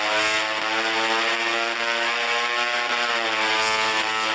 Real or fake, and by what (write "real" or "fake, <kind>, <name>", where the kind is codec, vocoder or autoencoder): real